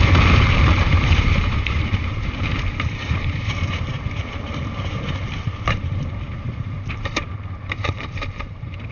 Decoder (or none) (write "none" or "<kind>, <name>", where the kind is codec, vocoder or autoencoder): vocoder, BigVGAN v2